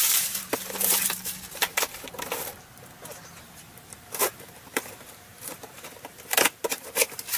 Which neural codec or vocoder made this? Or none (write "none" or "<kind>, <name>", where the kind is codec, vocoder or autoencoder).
vocoder, BigVGAN v2